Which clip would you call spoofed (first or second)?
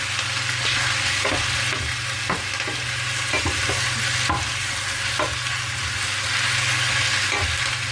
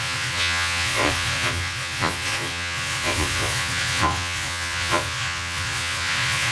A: second